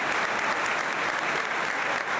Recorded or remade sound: recorded